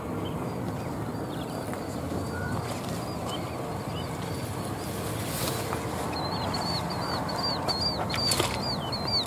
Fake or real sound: real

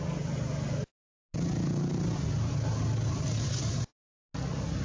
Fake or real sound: real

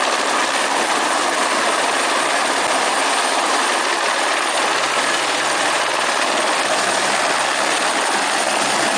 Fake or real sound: real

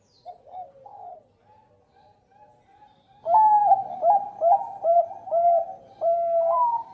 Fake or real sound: real